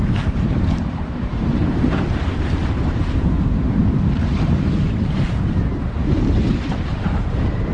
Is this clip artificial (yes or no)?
yes